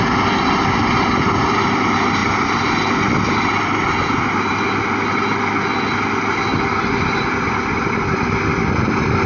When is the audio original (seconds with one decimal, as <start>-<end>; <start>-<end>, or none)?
0.0-9.3